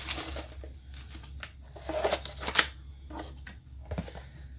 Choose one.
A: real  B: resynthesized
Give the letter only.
A